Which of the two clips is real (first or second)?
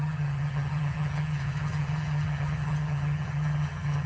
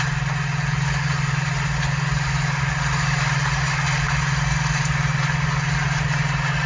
second